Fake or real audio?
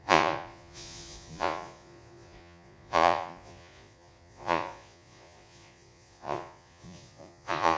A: fake